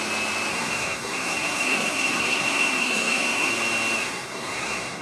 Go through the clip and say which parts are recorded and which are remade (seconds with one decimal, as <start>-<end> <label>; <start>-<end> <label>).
0.0-0.5 recorded; 0.5-3.5 remade; 3.5-4.0 recorded; 4.0-5.0 remade